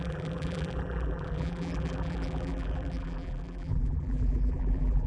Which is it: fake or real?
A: fake